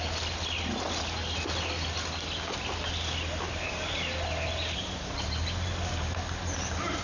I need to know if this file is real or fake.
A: real